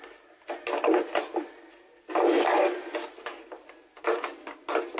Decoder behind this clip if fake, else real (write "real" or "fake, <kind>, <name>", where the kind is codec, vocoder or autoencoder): real